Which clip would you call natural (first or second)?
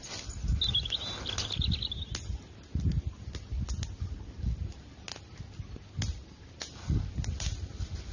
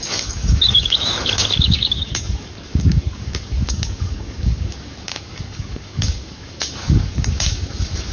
first